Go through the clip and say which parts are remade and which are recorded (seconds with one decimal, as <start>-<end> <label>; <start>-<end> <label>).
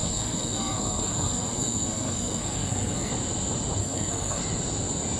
0.0-3.1 remade; 3.1-3.8 recorded; 3.8-4.4 remade; 4.4-5.2 recorded